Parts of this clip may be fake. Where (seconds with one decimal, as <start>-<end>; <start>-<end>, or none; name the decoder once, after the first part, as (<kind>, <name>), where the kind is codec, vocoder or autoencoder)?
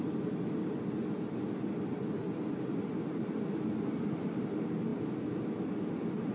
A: none